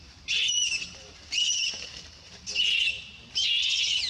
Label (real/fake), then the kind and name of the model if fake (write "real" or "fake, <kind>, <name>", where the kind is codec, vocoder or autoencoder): real